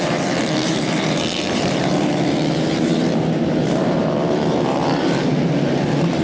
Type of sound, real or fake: fake